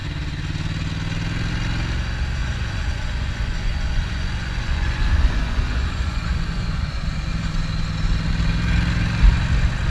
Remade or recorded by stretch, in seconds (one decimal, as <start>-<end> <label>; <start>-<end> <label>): 0.0-2.4 recorded; 2.4-7.3 remade; 7.3-9.9 recorded